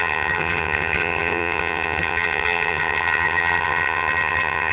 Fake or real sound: fake